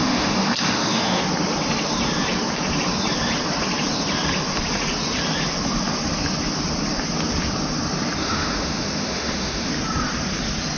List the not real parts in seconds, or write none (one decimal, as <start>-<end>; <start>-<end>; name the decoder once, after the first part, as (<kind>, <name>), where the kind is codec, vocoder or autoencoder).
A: 0.0-1.2 (autoencoder, DAC-VAE); 8.2-9.7